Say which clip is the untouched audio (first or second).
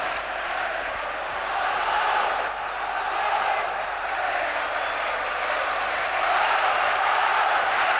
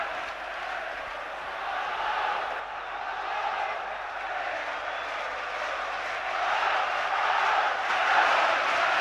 second